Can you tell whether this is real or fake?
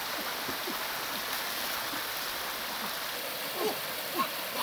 real